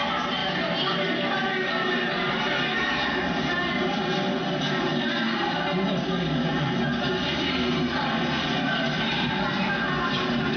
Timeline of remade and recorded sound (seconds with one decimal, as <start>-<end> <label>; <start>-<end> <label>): 0.0-10.6 recorded